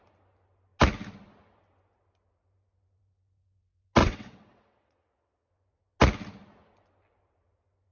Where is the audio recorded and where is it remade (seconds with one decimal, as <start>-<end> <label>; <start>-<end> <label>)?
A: 0.0-4.0 recorded; 4.0-5.5 remade; 5.5-7.9 recorded